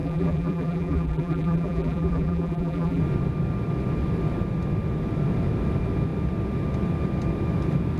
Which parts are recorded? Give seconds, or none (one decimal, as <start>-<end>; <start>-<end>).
3.0-8.0